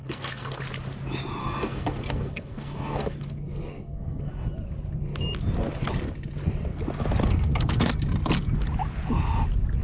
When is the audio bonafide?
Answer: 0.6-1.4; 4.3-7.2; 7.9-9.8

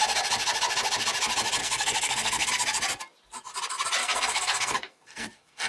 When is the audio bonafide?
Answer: 0.0-1.6; 2.5-4.0